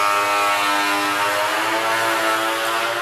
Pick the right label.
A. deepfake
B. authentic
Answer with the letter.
B